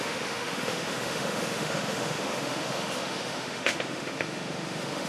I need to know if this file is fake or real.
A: fake